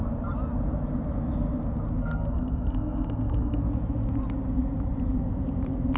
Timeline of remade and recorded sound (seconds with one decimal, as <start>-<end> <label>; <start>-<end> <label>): 0.0-2.0 recorded; 2.0-3.6 remade; 3.6-6.0 recorded